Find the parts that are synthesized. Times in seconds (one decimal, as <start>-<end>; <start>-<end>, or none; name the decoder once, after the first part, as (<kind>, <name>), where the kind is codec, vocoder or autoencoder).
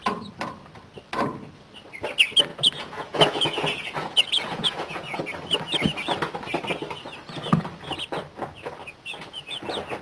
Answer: 2.5-5.2 (vocoder, Vocos); 8.8-9.6